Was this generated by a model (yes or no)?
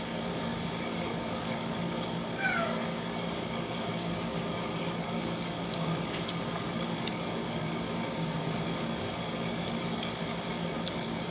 yes